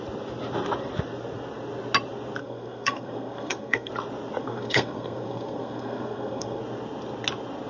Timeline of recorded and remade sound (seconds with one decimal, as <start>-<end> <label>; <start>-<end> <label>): 0.0-2.4 recorded; 2.4-3.9 remade; 3.9-4.4 recorded; 4.4-6.6 remade; 6.6-7.7 recorded